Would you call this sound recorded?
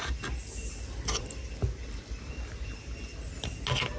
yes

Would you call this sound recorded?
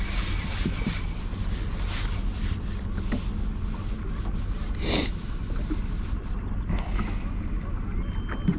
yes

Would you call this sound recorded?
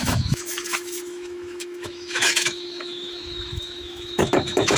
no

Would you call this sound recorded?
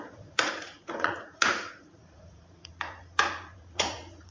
no